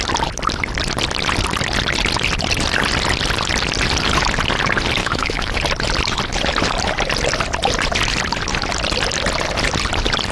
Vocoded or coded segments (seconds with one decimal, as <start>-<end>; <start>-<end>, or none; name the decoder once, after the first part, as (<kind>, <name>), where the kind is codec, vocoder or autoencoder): 5.0-5.5 (autoencoder, DAC-VAE)

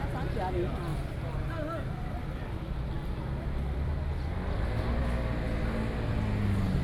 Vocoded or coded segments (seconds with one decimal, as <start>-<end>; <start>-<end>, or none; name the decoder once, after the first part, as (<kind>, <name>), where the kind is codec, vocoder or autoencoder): none

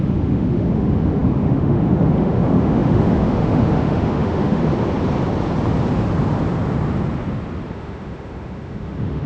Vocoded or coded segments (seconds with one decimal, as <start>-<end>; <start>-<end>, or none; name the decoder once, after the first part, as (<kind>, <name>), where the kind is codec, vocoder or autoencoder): 0.0-4.6 (autoencoder, DAC-VAE); 7.7-9.3

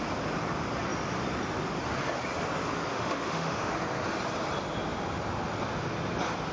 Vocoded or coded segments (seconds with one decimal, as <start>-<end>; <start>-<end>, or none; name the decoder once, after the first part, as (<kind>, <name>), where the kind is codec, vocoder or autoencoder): 2.9-3.7 (autoencoder, DAC-VAE)

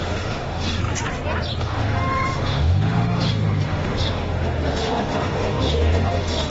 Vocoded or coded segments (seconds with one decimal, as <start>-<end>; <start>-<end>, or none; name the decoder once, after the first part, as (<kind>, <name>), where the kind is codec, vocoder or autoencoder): 0.0-0.8 (autoencoder, DAC-VAE); 1.6-6.5

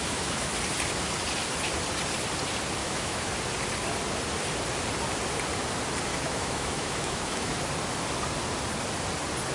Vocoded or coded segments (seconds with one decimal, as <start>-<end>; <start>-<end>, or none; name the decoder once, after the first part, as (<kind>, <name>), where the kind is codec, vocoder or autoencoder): 0.0-0.5 (autoencoder, DAC-VAE); 2.8-3.3; 6.1-7.6

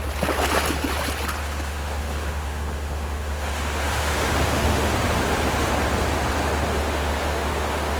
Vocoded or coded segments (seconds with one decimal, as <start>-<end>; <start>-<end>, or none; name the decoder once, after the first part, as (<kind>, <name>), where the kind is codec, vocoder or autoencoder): 1.4-4.9 (autoencoder, DAC-VAE); 6.7-8.0